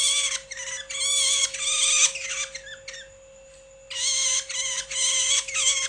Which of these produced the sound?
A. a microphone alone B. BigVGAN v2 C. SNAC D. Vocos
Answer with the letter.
A